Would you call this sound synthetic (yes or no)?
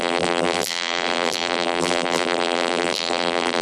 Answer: yes